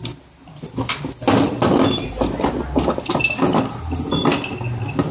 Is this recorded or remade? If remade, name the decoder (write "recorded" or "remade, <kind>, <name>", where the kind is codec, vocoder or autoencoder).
recorded